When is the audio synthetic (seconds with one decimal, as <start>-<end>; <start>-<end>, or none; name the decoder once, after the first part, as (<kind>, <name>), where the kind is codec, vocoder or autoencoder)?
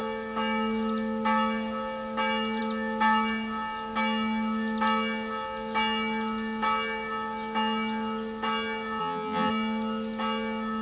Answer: 9.0-9.5 (vocoder, HiFi-GAN)